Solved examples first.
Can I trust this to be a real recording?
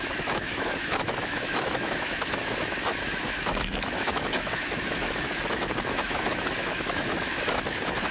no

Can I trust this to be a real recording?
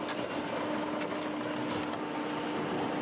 yes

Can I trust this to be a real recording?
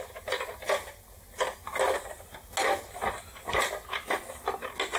yes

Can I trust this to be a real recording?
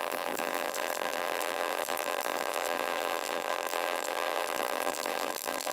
no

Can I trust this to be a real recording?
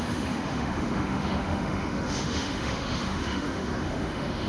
no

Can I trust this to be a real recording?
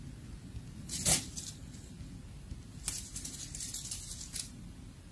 yes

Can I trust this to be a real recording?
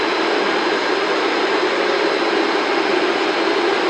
yes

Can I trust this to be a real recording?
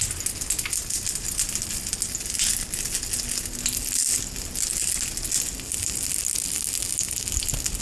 yes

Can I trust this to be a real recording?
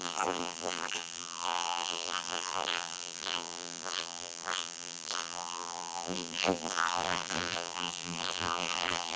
no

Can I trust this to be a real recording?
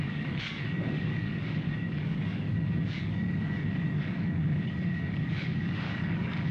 no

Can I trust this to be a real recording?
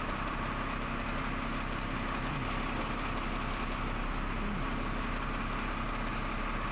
yes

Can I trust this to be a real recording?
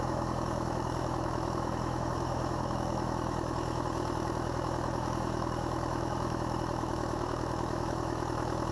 no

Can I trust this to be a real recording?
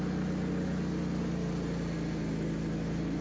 yes